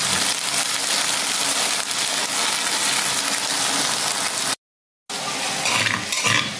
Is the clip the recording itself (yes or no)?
yes